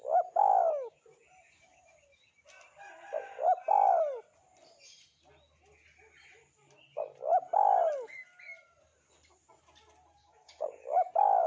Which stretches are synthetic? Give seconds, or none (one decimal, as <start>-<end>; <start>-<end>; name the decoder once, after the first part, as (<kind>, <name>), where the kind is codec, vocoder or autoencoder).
10.2-11.1 (codec, DAC)